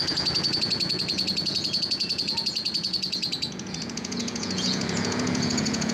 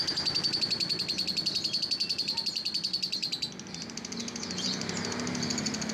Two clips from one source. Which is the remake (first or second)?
first